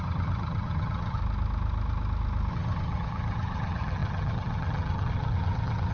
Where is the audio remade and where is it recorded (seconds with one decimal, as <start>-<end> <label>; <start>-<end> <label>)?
0.0-1.2 remade; 1.2-2.5 recorded; 2.5-5.9 remade